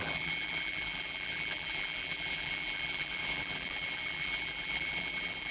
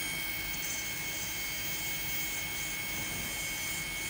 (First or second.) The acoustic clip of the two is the second